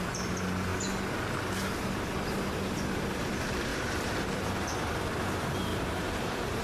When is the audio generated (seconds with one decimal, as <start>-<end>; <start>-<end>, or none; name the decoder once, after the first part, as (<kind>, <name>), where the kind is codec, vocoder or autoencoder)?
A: 3.7-4.4 (vocoder, BigVGAN v2); 5.7-6.6